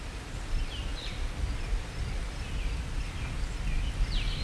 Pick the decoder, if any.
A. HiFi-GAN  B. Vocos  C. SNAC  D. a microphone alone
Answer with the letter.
D